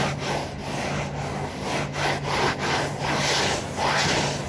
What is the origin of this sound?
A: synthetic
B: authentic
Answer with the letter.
B